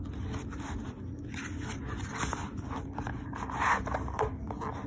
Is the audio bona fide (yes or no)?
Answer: yes